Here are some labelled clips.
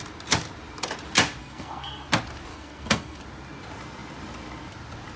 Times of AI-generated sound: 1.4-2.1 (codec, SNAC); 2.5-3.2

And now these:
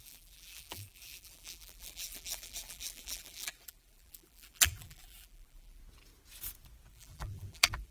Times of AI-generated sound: 0.0-5.8 (vocoder, BigVGAN v2); 6.9-7.9

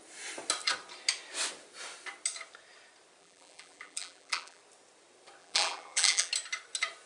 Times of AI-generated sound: 3.2-4.6 (vocoder, BigVGAN v2); 5.4-6.3

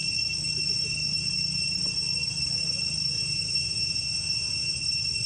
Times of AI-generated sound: 3.1-4.8 (vocoder, Vocos)

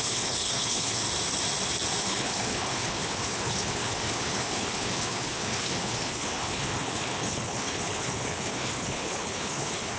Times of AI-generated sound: 0.0-1.0 (codec, HILCodec); 2.0-10.0

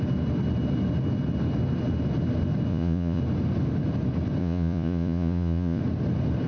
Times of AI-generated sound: 2.7-3.2 (vocoder, Vocos); 4.4-5.8

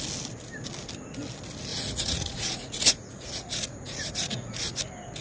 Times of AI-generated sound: 1.7-4.8 (vocoder, Vocos)